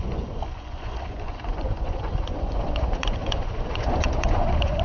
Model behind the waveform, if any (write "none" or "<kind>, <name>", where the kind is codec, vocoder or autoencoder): vocoder, Vocos